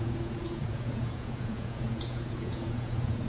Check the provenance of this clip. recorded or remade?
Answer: remade